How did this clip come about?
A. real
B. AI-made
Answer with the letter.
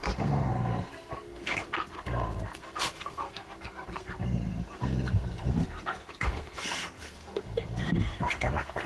B